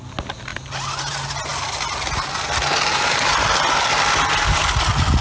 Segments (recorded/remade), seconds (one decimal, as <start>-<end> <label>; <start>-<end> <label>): 0.0-5.2 recorded